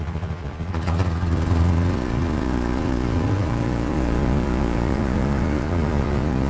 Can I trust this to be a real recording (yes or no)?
no